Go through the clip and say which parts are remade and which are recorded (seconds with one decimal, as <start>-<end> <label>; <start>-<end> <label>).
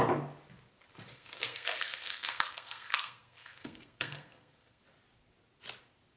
0.0-1.1 recorded; 1.1-4.8 remade; 4.8-6.2 recorded